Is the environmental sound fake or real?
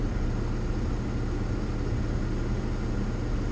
real